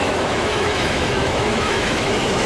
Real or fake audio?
fake